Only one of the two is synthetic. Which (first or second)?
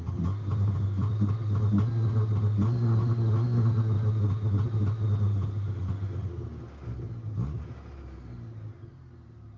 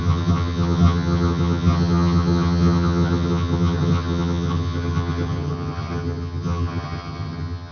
second